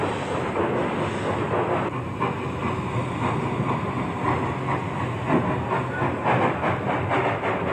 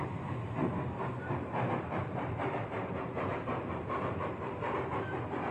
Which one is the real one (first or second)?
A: first